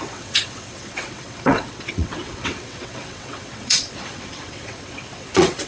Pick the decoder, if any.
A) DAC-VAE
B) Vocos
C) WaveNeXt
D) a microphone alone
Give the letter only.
C